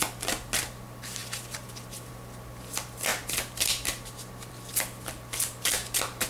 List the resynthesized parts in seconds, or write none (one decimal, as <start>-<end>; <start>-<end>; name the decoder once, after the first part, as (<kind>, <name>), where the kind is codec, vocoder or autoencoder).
none